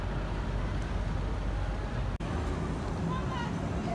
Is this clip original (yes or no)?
yes